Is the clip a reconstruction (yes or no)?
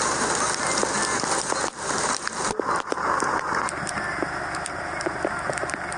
no